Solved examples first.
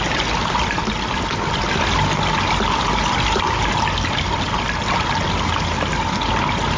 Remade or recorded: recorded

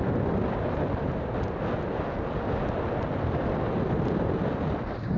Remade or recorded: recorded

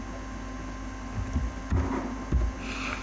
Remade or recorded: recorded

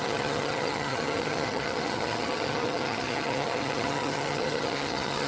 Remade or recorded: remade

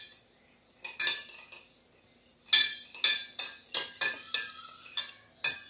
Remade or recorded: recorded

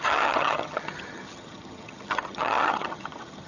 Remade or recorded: remade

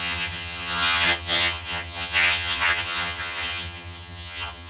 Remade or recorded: remade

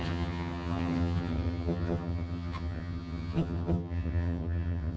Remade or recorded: remade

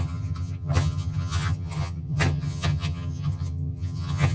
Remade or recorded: remade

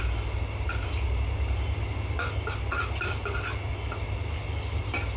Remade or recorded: recorded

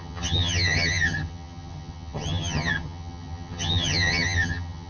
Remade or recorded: remade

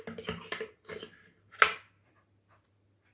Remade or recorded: recorded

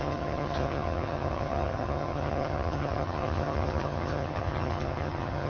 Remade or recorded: remade